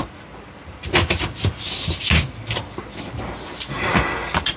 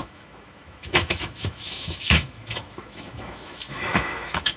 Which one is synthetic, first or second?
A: second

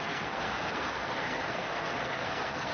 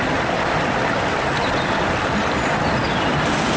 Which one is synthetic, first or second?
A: first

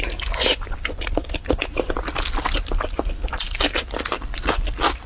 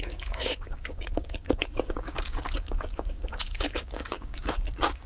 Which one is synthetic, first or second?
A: second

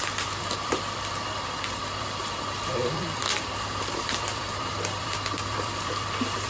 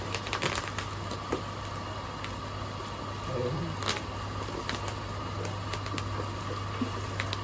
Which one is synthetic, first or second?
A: first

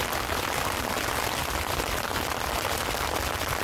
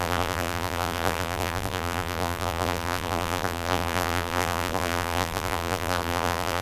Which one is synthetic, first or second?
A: second